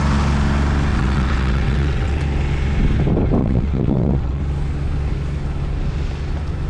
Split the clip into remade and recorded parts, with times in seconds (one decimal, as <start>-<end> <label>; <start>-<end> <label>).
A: 0.0-0.9 recorded; 0.9-2.2 remade; 2.2-3.4 recorded; 3.4-4.4 remade; 4.4-6.7 recorded

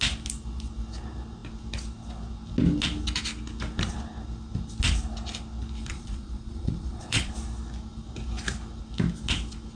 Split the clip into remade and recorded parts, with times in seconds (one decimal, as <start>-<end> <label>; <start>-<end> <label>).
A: 0.0-5.8 recorded; 5.8-7.3 remade; 7.3-9.8 recorded

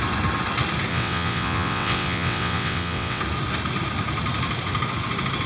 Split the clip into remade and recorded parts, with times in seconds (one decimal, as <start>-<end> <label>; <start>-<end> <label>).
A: 0.0-0.9 recorded; 0.9-3.2 remade; 3.2-5.5 recorded

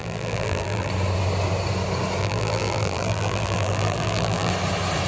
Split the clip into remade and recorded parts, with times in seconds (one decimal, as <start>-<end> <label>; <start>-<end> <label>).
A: 0.0-0.9 remade; 0.9-2.2 recorded; 2.2-4.5 remade; 4.5-5.1 recorded

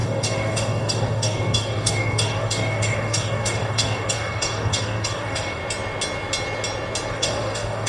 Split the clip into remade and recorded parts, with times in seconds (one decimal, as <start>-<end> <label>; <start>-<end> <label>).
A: 0.0-5.6 remade; 5.6-7.1 recorded; 7.1-7.9 remade

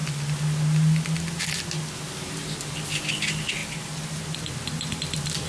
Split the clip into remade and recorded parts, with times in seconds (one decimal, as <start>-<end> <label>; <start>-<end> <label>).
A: 0.0-5.5 recorded

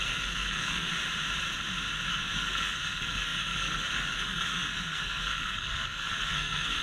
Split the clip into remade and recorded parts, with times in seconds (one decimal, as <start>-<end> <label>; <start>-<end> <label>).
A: 0.0-0.9 remade; 0.9-2.1 recorded; 2.1-6.8 remade

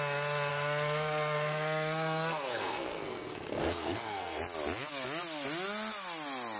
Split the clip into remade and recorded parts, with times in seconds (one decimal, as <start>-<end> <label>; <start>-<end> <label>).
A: 0.0-0.5 recorded; 0.5-4.4 remade; 4.4-6.6 recorded